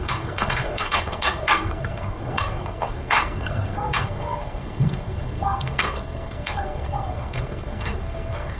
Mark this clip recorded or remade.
remade